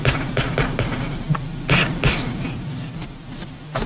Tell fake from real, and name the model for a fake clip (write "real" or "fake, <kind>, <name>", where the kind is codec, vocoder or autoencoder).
real